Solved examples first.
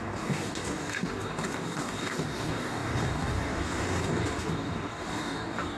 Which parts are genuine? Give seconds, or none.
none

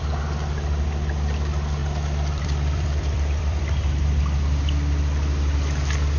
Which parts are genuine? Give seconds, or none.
0.0-1.8; 3.6-6.2

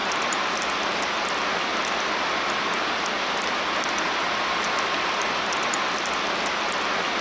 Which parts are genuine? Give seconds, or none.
0.6-7.2

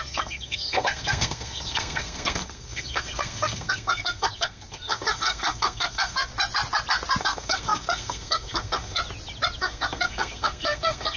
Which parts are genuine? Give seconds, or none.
6.3-7.2; 9.0-9.6

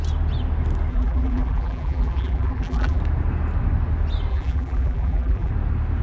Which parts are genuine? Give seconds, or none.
0.0-0.9; 3.0-4.3; 5.5-6.0